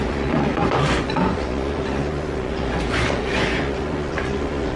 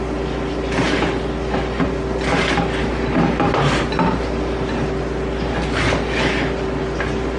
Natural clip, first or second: second